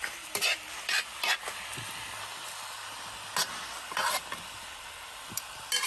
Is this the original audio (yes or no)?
yes